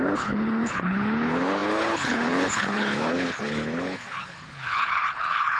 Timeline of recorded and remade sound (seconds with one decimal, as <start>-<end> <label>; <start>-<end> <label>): 0.0-5.6 remade